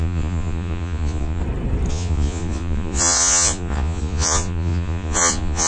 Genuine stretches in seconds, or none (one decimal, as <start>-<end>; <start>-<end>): 1.4-1.9